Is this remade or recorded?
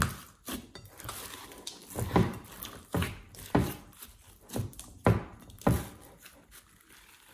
recorded